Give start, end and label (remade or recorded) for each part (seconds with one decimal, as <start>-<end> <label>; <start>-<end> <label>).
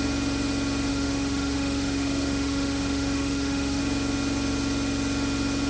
0.0-0.9 recorded; 0.9-3.8 remade; 3.8-5.7 recorded